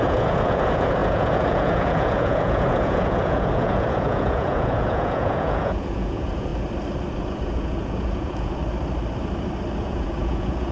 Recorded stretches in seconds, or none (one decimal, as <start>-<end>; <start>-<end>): 6.5-7.2; 8.6-9.8